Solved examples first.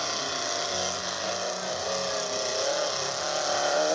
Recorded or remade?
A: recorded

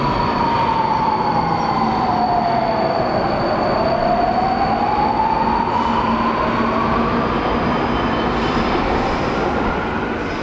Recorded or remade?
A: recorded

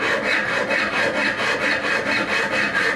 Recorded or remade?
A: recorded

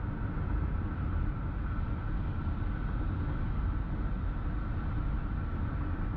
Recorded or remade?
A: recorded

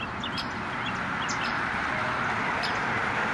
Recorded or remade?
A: recorded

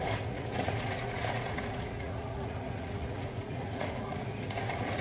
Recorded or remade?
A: remade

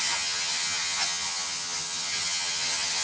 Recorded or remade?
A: remade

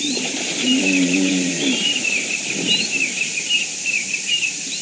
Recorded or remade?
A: remade